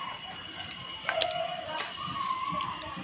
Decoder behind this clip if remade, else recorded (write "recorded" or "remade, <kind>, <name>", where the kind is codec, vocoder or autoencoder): recorded